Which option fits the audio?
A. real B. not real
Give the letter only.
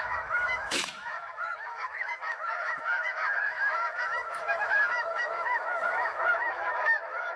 B